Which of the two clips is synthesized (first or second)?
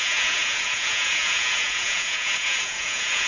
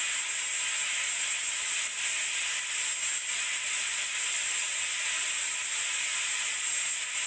first